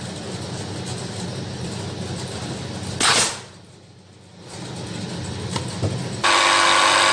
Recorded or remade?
recorded